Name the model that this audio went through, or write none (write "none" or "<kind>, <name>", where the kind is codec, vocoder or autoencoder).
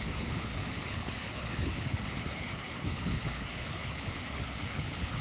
codec, HILCodec